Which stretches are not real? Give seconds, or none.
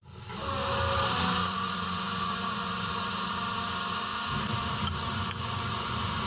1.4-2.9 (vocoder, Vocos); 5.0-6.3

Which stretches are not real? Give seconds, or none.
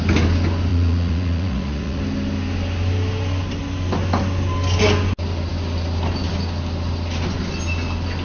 0.7-2.0 (vocoder, Vocos)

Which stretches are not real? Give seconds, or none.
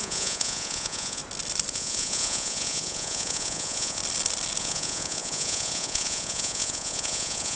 0.0-1.2 (vocoder, Vocos); 1.7-4.0; 4.6-7.6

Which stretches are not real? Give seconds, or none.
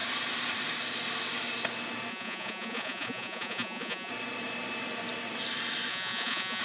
2.1-4.1 (vocoder, Vocos); 5.9-6.6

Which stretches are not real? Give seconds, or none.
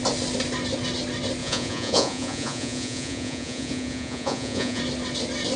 1.4-4.8 (vocoder, Vocos)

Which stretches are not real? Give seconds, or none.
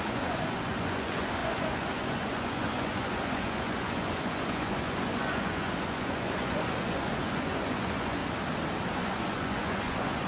0.0-8.2 (vocoder, Vocos); 8.9-10.3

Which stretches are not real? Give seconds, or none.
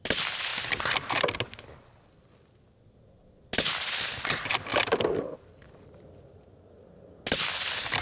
none